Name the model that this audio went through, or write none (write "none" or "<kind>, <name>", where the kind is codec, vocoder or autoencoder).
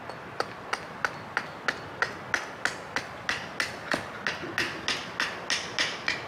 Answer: none